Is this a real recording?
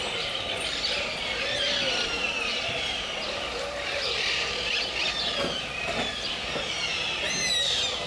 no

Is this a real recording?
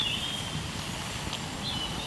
yes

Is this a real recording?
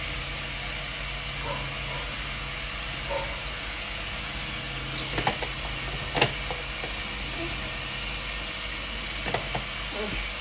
yes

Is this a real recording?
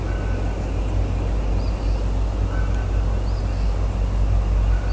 yes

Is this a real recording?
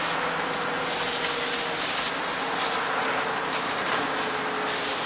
yes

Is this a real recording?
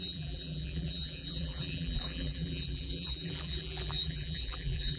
no